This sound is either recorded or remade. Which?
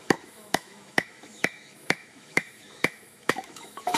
remade